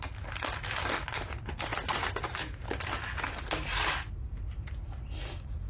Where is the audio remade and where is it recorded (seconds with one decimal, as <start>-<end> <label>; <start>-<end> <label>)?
0.0-5.7 recorded